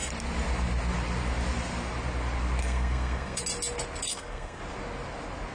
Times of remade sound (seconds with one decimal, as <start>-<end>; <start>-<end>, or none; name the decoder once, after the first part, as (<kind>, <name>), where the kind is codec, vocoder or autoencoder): 2.6-3.4 (codec, SNAC); 4.1-4.6